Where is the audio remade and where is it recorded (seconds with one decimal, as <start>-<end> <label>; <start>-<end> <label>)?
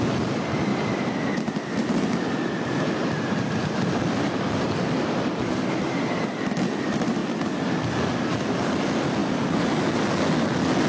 0.0-0.7 recorded; 0.7-5.5 remade; 5.5-10.9 recorded